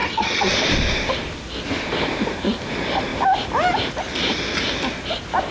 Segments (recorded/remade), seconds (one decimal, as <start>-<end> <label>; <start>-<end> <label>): 0.0-0.5 remade; 0.5-5.5 recorded